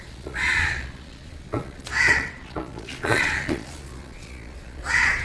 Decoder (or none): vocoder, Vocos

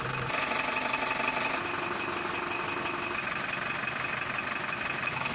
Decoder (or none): none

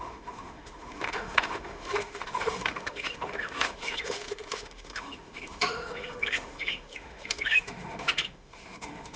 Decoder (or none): autoencoder, DAC-VAE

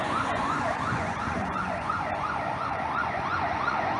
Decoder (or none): vocoder, Vocos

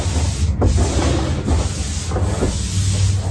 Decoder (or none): none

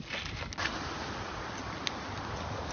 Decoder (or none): none